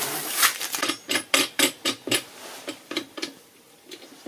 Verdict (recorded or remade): remade